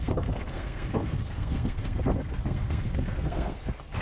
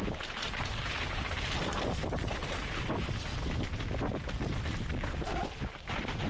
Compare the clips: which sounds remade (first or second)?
first